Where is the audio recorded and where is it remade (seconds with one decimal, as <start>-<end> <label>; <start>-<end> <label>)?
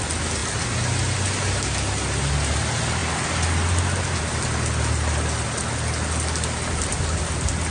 0.0-7.7 recorded